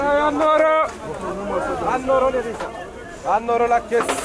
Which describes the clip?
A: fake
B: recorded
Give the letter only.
B